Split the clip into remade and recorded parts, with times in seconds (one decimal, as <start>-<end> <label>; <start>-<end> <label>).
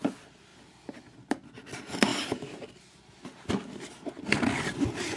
0.0-5.2 recorded